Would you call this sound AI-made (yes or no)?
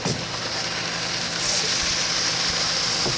no